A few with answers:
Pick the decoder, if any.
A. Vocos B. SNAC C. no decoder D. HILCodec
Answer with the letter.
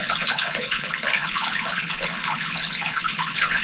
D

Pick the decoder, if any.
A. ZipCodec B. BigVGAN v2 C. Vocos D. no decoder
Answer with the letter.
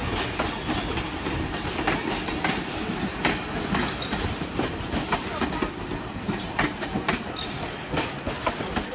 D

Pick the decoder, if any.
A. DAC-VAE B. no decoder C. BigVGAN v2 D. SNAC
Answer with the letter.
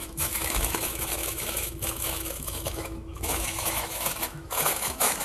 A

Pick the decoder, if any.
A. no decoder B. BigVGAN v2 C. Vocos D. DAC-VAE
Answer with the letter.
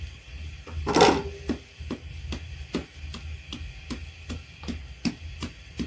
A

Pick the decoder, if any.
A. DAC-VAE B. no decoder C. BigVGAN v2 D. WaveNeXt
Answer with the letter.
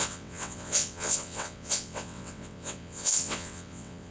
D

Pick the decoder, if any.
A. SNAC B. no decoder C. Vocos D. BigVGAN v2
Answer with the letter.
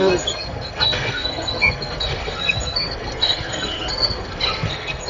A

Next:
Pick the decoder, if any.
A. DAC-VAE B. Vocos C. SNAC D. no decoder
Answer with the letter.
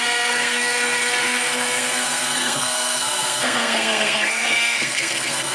C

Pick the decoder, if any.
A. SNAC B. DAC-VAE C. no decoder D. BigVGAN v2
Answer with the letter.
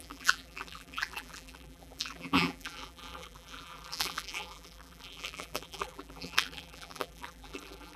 D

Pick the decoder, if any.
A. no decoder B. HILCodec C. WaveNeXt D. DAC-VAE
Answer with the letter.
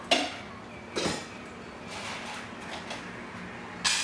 A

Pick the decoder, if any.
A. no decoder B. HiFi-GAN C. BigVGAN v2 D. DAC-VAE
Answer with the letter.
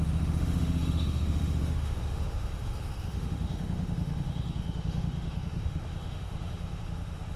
D